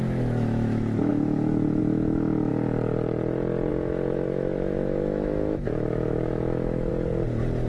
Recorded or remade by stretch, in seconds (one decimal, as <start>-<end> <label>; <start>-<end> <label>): 0.0-2.5 remade; 2.5-3.7 recorded; 3.7-6.9 remade; 6.9-7.7 recorded